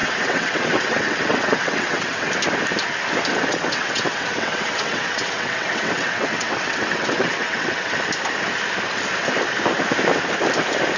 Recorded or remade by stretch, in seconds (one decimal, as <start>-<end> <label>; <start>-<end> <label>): 0.0-2.3 remade; 2.3-3.5 recorded; 3.5-7.9 remade; 7.9-11.0 recorded